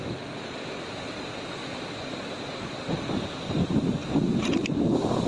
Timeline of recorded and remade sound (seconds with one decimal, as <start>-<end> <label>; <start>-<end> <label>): 0.0-5.3 recorded